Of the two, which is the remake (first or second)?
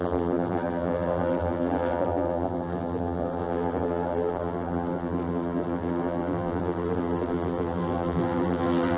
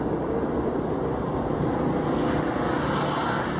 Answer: first